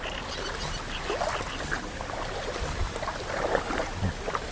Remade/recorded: recorded